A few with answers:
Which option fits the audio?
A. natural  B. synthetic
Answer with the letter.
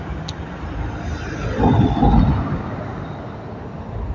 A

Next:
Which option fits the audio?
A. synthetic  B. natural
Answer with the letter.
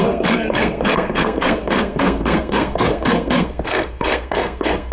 A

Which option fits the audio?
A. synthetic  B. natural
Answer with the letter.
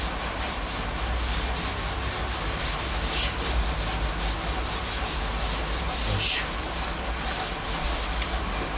B